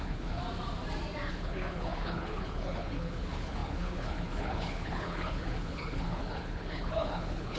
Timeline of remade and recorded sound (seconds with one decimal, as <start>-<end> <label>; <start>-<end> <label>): 0.0-0.4 remade; 0.4-1.3 recorded; 1.3-7.6 remade

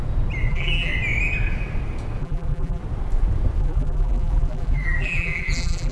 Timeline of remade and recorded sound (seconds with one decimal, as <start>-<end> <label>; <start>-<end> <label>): 0.0-0.5 recorded; 0.5-0.9 remade; 0.9-2.2 recorded; 2.2-2.8 remade; 2.8-3.6 recorded; 3.6-5.9 remade

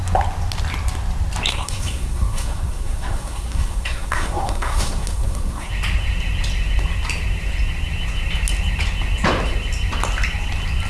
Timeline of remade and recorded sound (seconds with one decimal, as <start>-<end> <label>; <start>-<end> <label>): 0.0-1.5 recorded; 1.5-5.7 remade; 5.7-10.9 recorded

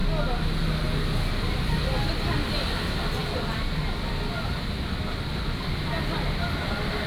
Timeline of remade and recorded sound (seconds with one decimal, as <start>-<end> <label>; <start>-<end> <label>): 0.0-7.1 recorded